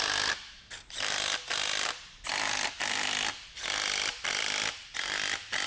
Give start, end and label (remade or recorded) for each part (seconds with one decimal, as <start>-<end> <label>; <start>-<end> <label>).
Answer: 0.0-5.7 remade